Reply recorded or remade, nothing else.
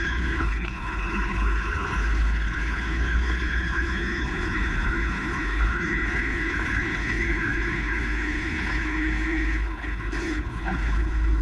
remade